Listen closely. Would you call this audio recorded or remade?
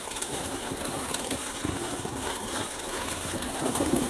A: remade